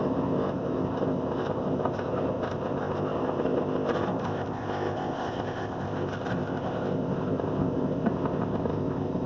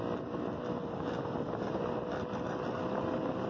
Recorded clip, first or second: second